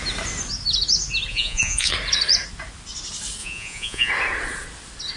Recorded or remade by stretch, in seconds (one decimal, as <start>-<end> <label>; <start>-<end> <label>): 0.0-1.3 recorded; 1.3-1.9 remade; 1.9-3.4 recorded; 3.4-4.1 remade; 4.1-5.2 recorded